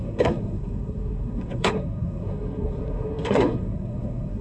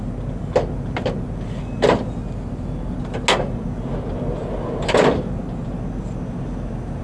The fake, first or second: first